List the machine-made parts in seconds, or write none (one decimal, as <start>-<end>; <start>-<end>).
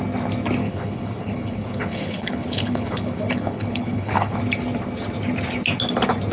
0.6-4.4